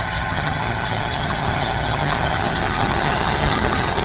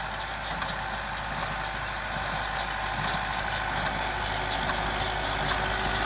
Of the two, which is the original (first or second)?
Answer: second